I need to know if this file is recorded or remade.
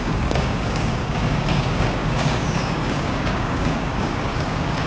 remade